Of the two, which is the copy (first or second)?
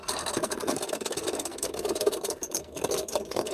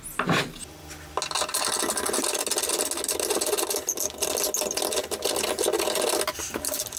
first